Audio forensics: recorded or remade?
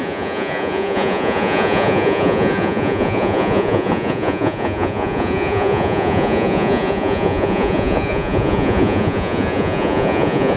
remade